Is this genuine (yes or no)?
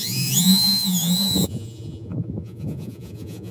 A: no